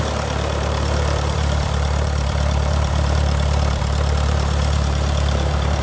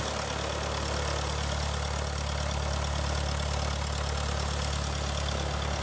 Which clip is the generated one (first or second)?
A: first